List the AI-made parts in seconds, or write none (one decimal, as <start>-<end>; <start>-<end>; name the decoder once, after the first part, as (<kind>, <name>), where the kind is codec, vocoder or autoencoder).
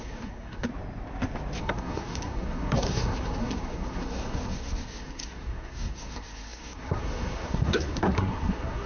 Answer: 0.0-0.7 (codec, SNAC); 1.6-8.9